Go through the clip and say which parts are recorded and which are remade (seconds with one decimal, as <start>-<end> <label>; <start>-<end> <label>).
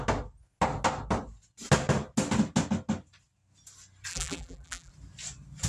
0.0-4.1 recorded; 4.1-4.9 remade; 4.9-5.7 recorded